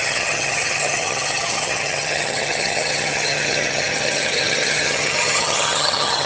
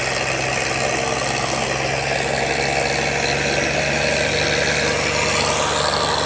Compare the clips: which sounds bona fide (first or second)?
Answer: second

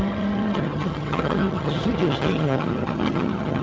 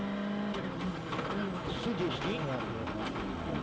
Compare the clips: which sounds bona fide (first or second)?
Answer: second